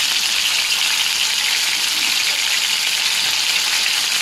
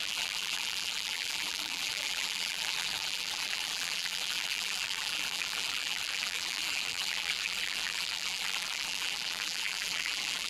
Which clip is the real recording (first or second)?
first